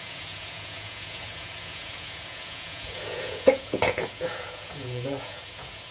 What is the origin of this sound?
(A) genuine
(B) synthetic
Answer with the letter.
B